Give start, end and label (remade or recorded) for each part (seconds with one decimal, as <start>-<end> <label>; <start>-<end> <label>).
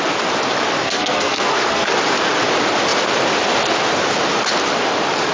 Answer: 0.0-0.8 recorded; 0.8-1.9 remade; 1.9-5.3 recorded